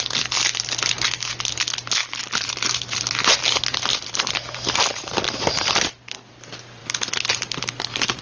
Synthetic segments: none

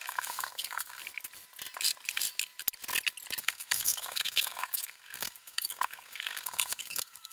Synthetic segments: 0.0-1.0 (codec, SNAC); 3.4-7.3

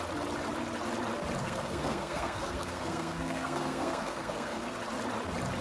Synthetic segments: 1.4-4.8 (codec, SNAC)

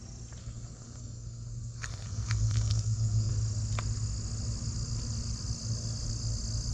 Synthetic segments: 0.4-3.3 (codec, SNAC)

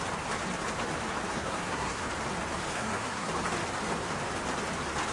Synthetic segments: 1.3-2.0 (codec, SNAC); 2.7-3.3